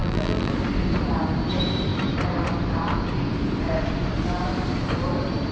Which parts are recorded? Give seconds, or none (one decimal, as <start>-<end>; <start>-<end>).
0.5-5.5